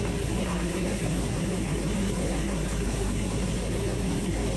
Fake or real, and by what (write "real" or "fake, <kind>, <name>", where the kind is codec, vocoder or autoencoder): fake, codec, SNAC